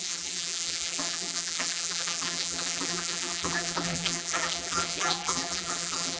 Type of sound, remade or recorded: remade